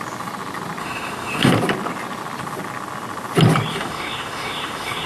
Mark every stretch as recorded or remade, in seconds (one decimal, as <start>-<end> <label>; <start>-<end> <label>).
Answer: 0.0-0.8 recorded; 0.8-1.5 remade; 1.5-3.7 recorded; 3.7-5.1 remade